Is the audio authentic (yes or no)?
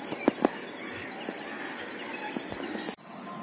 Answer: yes